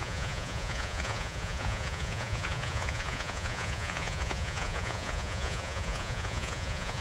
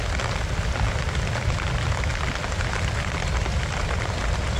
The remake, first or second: first